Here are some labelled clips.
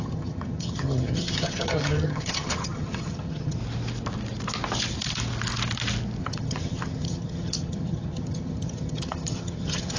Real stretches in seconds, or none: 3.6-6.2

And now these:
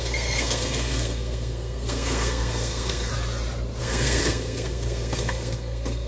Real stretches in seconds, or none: 3.1-3.8

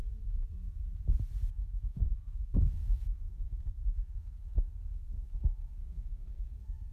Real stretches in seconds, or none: 0.0-1.5

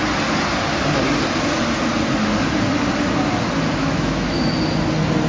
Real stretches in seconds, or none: 0.0-3.8; 4.5-5.3

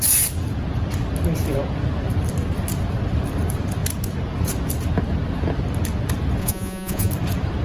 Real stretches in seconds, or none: 0.0-6.4; 7.1-7.6

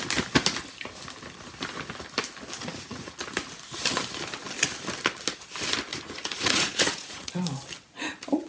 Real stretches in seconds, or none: 0.0-2.6; 3.2-5.9; 7.3-8.5

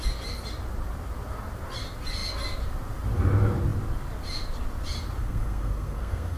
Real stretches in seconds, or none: 0.0-5.2

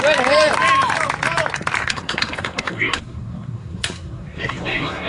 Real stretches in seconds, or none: 0.0-1.8